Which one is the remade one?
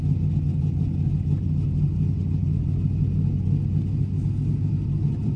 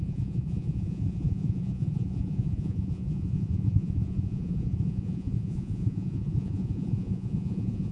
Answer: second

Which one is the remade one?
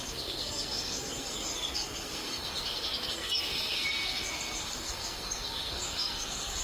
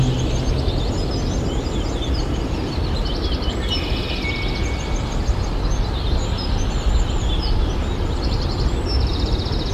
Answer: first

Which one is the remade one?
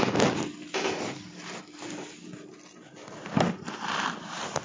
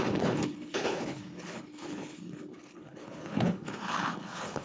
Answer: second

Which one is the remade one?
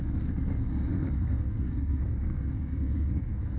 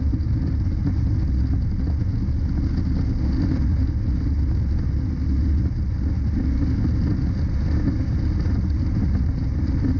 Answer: first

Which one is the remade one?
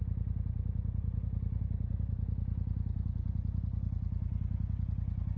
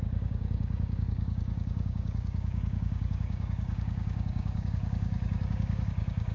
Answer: second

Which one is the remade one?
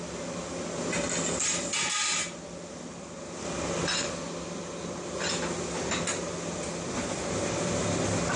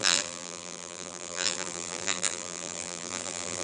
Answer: second